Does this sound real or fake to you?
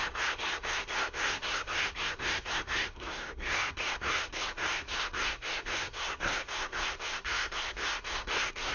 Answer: fake